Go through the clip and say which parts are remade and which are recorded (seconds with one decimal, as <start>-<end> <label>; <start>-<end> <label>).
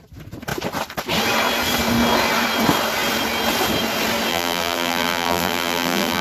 0.0-4.3 recorded; 4.3-6.2 remade